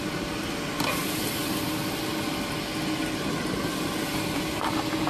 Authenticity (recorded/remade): recorded